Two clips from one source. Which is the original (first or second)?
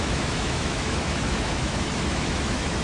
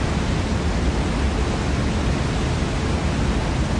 second